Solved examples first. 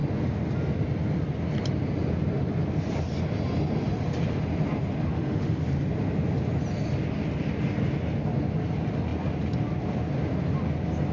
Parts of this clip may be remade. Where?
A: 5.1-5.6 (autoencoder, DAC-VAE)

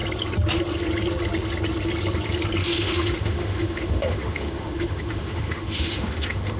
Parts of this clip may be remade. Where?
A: 2.6-6.6 (autoencoder, DAC-VAE)

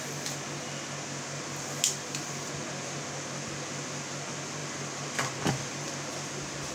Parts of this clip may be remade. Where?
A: none

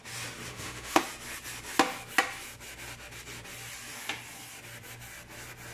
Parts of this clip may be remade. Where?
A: 0.5-1.0 (autoencoder, DAC-VAE)

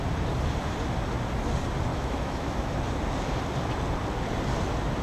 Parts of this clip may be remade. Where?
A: 1.9-2.7 (autoencoder, DAC-VAE)

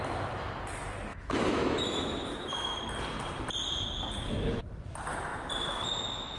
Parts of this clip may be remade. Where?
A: 1.1-2.8 (autoencoder, DAC-VAE)